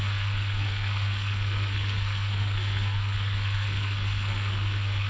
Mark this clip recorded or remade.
remade